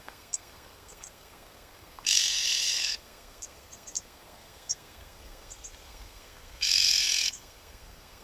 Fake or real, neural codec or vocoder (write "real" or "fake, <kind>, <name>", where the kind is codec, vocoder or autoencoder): fake, codec, SNAC